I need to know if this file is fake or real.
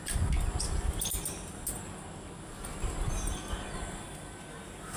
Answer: real